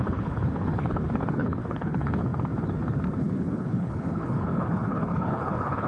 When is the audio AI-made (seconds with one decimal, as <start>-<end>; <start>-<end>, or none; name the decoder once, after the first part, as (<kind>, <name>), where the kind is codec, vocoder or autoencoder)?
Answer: 0.0-2.2 (codec, HILCodec); 3.2-5.9